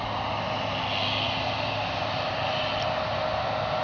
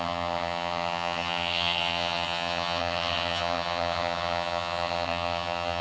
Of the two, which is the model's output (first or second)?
second